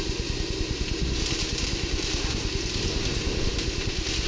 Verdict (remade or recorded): recorded